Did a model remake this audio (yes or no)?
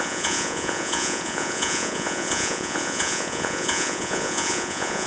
yes